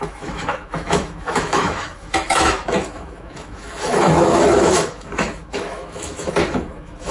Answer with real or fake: fake